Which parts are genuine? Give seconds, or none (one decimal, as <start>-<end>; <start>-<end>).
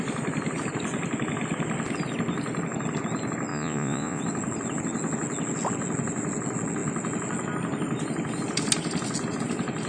0.0-3.5; 4.2-9.9